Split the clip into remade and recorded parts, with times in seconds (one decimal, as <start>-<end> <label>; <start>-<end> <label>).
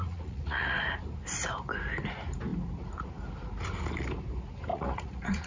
0.0-0.8 remade; 0.8-4.7 recorded; 4.7-5.5 remade